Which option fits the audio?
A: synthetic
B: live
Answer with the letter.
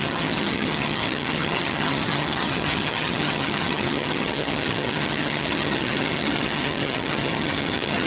A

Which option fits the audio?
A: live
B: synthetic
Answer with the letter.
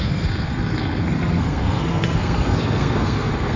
B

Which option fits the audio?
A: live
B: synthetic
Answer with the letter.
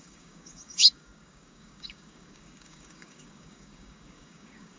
B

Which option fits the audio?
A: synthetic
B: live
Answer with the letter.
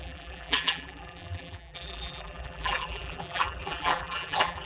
A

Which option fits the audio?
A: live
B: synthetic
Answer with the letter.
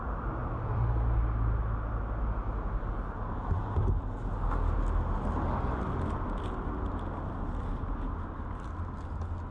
A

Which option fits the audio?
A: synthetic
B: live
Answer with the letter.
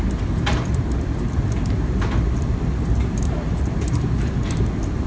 B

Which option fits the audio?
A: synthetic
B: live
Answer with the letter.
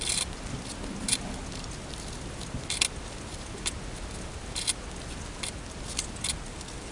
B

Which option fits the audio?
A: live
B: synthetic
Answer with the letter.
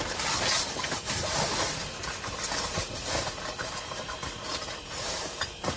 A